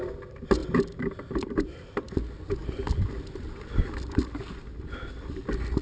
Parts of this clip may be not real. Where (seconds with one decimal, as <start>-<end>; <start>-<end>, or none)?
none